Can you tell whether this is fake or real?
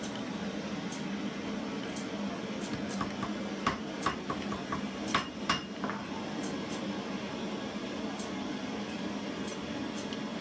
real